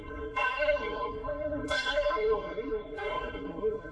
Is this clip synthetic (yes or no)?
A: yes